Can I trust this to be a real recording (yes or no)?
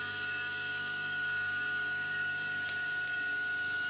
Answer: no